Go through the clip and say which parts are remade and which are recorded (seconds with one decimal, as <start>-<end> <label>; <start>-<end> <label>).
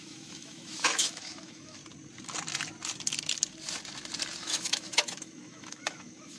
0.0-1.8 remade; 1.8-4.4 recorded; 4.4-6.4 remade